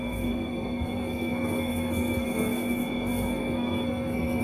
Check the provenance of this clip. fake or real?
fake